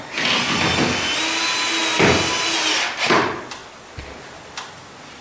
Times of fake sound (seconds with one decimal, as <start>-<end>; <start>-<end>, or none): none